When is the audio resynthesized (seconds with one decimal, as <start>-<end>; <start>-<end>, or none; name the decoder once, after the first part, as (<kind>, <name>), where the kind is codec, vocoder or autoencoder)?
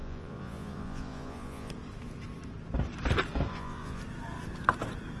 0.0-1.7 (vocoder, Vocos); 3.5-4.0